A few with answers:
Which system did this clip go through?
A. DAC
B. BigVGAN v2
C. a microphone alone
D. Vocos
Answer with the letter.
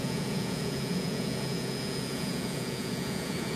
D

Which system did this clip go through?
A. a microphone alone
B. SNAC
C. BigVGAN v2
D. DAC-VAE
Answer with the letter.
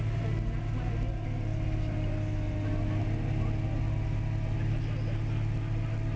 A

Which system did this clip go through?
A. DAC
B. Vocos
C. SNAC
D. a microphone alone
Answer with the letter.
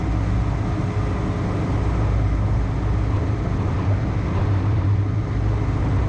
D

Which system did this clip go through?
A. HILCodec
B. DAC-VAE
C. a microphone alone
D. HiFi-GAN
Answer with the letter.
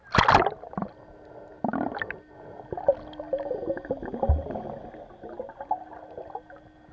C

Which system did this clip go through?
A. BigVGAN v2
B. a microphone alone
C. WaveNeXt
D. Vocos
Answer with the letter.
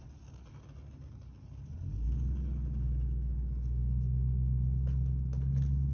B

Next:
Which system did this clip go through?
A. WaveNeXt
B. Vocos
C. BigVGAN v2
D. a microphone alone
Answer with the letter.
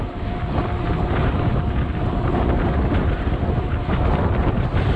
D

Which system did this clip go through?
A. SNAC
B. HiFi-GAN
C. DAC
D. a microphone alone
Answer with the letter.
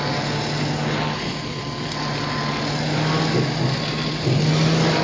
D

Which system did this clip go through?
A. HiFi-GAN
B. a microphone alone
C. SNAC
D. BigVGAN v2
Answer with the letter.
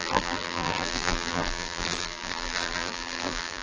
D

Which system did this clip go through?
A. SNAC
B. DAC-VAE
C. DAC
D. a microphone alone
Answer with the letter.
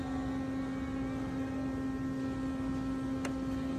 D